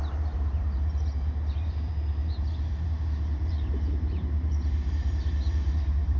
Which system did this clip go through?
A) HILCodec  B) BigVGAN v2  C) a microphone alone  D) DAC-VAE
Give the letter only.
B